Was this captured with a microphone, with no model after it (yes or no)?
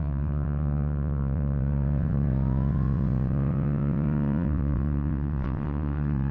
no